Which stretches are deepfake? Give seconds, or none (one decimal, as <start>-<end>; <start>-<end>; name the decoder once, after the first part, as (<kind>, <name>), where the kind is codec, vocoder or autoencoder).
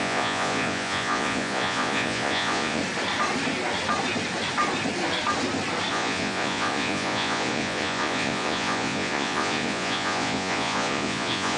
0.0-2.8 (vocoder, Vocos); 5.9-11.6